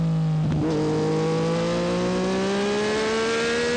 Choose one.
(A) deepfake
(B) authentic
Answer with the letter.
B